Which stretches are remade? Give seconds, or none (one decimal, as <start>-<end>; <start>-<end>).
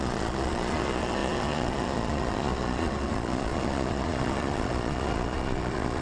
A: 0.0-6.0